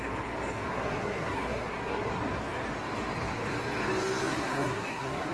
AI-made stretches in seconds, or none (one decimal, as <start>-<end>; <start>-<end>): 0.7-2.2; 4.3-5.3